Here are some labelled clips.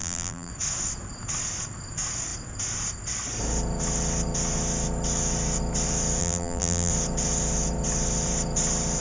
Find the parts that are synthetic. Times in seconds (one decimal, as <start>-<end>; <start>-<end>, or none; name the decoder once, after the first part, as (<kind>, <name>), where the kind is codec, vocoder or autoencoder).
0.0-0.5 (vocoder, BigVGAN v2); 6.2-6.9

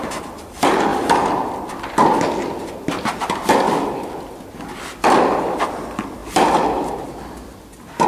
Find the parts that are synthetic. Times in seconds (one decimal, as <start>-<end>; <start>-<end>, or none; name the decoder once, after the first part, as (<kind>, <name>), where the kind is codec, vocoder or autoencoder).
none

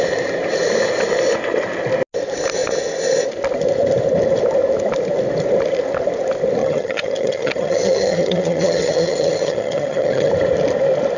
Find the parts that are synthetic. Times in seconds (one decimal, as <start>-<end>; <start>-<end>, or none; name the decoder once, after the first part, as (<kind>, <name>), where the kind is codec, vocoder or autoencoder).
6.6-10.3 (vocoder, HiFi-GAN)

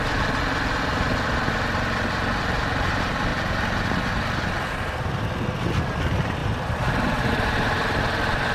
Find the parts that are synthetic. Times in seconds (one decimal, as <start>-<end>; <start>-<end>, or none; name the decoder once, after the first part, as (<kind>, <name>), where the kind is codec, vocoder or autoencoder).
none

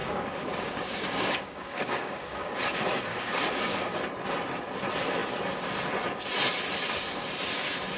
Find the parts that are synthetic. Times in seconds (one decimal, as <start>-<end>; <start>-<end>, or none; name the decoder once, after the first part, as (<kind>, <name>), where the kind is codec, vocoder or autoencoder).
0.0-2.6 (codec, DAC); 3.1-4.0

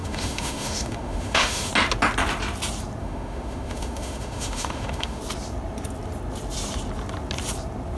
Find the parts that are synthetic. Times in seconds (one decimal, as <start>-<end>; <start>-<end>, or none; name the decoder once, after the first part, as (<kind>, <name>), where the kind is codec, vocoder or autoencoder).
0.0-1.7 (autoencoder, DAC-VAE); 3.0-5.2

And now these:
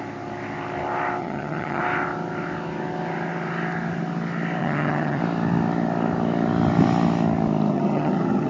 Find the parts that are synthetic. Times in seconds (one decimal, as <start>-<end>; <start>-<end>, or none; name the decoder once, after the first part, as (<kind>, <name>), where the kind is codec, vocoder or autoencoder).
1.2-1.8 (vocoder, HiFi-GAN); 4.6-5.2; 7.7-8.5